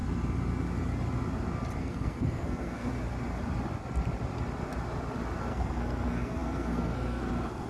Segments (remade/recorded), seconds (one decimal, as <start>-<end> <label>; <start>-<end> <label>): 0.0-1.8 recorded; 1.8-2.9 remade; 2.9-5.4 recorded; 5.4-7.7 remade